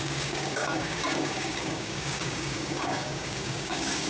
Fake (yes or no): yes